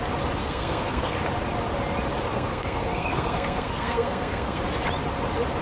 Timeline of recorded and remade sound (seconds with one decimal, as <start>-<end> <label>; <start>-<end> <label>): 0.0-0.4 recorded; 0.4-1.2 remade; 1.2-2.3 recorded; 2.3-4.6 remade; 4.6-5.6 recorded